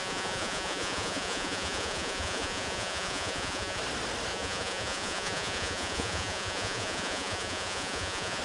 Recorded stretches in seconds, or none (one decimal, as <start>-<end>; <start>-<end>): 3.8-4.3